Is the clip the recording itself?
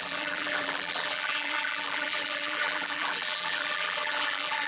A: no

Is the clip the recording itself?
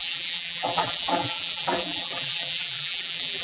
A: no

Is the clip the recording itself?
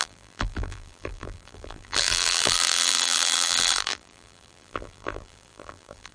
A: no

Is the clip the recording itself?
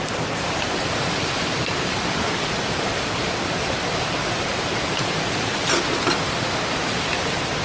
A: no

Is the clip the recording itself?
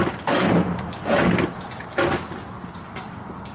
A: yes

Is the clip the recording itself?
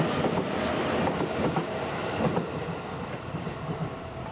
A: yes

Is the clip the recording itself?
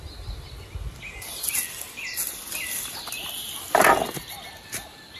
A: yes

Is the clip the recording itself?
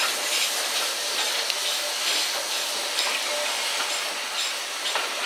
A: yes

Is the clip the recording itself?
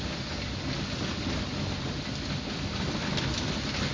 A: yes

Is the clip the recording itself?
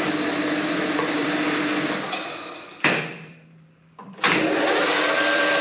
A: no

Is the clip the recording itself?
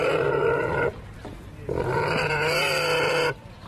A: yes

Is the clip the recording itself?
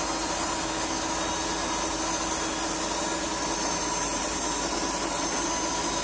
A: yes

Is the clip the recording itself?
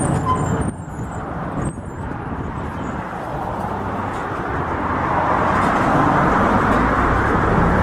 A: no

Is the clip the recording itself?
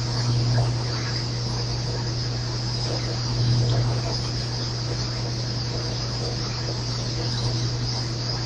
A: yes